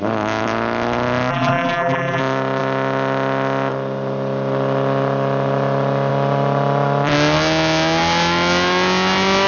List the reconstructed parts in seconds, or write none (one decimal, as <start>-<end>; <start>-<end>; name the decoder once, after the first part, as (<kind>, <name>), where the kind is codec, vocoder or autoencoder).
1.3-2.2 (vocoder, BigVGAN v2)